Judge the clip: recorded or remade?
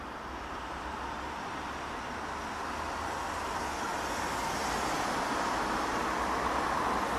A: recorded